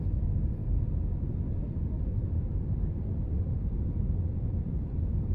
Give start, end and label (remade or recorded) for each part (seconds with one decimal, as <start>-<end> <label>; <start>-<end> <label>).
0.0-5.3 remade

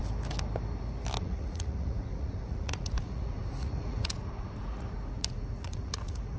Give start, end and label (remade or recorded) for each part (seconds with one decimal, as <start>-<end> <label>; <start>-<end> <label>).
0.0-1.2 recorded; 1.2-6.4 remade

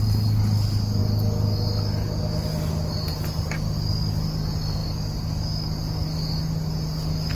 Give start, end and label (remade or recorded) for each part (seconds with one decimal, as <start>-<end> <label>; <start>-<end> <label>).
0.0-7.3 recorded

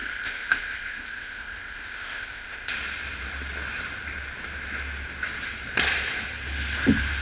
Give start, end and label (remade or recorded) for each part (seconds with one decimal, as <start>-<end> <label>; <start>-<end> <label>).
0.0-2.7 remade; 2.7-7.2 recorded

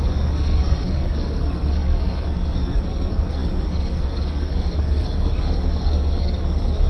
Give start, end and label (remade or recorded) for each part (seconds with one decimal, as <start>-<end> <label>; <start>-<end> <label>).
0.0-6.9 remade

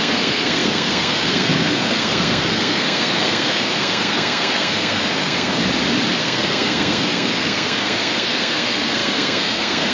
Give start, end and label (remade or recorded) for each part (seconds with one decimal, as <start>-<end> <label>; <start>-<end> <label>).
0.0-5.6 remade; 5.6-6.2 recorded; 6.2-9.9 remade

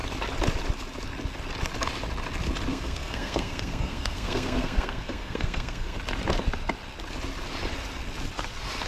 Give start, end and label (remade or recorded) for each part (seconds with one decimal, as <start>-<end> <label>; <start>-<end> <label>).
0.0-2.7 recorded; 2.7-6.0 remade; 6.0-8.9 recorded